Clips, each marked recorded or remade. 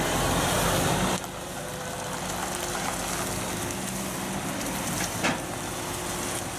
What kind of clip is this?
recorded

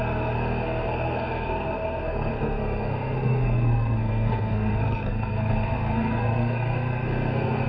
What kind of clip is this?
remade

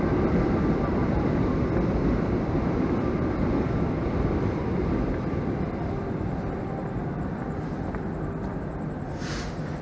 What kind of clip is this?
remade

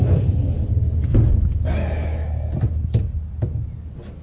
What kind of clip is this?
recorded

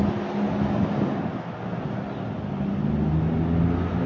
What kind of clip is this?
recorded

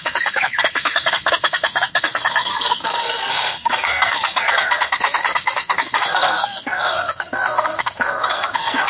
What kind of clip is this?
remade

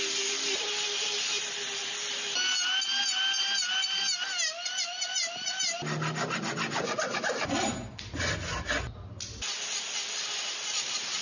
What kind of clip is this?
recorded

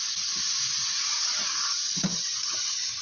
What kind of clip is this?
recorded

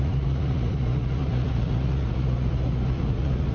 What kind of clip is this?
remade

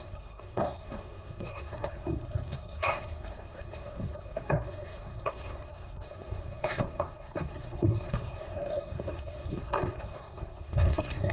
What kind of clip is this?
remade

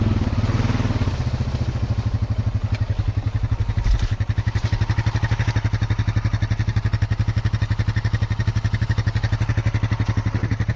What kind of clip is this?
recorded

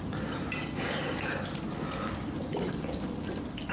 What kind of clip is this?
recorded